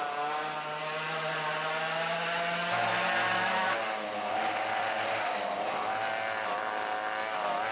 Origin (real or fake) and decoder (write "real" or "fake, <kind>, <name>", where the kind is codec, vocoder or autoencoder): real